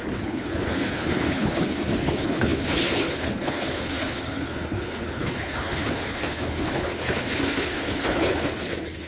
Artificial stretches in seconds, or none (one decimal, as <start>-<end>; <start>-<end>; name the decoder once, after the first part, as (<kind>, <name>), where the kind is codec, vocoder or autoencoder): 0.0-9.1 (codec, HILCodec)